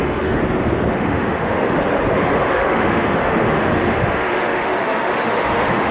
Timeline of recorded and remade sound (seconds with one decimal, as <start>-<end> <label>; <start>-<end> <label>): 0.0-0.4 remade; 0.4-0.9 recorded; 0.9-2.0 remade; 2.0-2.5 recorded; 2.5-5.9 remade